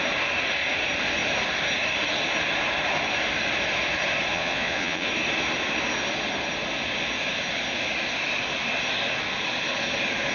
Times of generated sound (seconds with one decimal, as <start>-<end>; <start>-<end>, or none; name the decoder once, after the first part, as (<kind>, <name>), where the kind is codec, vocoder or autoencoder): 4.3-5.1 (vocoder, Vocos)